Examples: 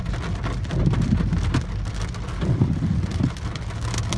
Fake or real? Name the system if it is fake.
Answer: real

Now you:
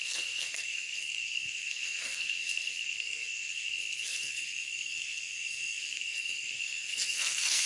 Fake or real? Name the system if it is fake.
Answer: fake, codec, SNAC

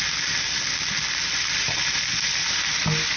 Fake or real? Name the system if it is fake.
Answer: real